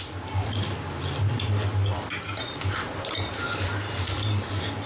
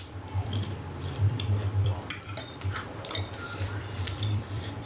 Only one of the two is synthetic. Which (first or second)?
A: second